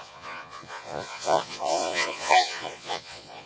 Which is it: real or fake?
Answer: fake